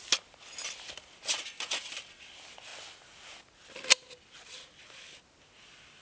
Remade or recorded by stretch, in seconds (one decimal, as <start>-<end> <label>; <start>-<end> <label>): 0.0-6.0 recorded